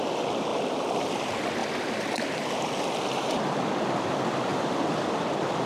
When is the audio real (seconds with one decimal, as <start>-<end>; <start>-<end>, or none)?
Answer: 0.0-0.5; 1.1-1.6; 3.6-4.5; 5.0-5.7

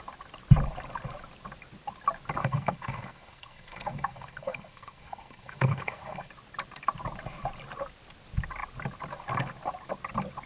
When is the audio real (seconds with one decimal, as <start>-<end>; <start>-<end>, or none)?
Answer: 0.0-2.4; 6.3-10.5

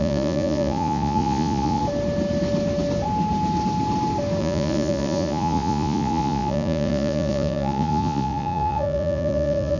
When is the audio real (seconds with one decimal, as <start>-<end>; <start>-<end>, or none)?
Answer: 1.8-4.4

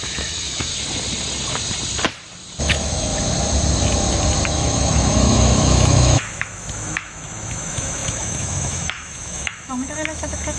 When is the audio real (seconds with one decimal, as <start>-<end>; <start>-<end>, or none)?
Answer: 0.7-2.6; 3.1-4.5

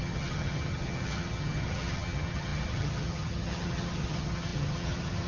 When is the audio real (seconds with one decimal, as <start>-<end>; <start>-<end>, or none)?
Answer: none

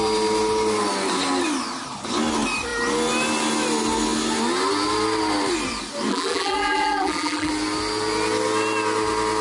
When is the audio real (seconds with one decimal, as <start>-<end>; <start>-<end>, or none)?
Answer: 0.0-6.1; 7.5-9.4

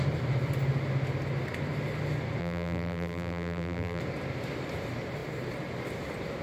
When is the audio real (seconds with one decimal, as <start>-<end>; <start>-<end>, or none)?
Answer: 0.0-2.4; 4.0-6.4

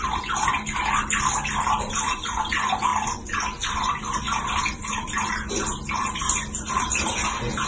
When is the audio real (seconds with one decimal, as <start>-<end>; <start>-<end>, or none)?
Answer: 0.0-7.7